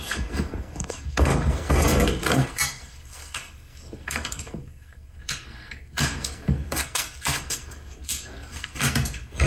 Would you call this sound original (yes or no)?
no